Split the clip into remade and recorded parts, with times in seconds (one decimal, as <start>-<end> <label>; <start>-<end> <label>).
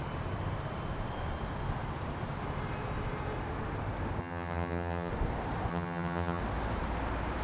0.0-4.2 recorded; 4.2-5.1 remade; 5.1-5.7 recorded; 5.7-6.4 remade; 6.4-7.4 recorded